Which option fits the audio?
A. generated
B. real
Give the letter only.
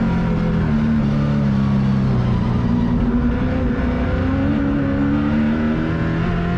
B